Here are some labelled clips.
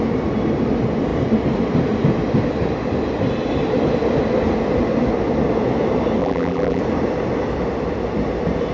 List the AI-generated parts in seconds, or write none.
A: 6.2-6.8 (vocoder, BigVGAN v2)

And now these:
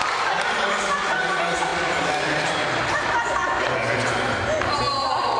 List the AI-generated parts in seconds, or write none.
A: 1.7-2.8 (vocoder, BigVGAN v2); 3.4-5.4